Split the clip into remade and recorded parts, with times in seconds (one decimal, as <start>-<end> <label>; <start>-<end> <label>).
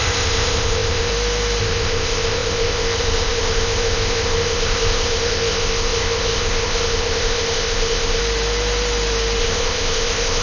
0.0-1.1 remade; 1.1-1.6 recorded; 1.6-8.2 remade; 8.2-9.4 recorded; 9.4-10.4 remade